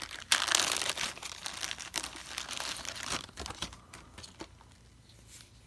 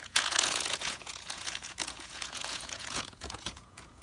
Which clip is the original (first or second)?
first